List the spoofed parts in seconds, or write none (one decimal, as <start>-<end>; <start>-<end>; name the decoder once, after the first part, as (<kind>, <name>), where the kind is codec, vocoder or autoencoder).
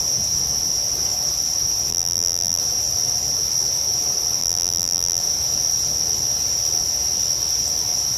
1.9-2.6 (vocoder, BigVGAN v2); 4.4-5.2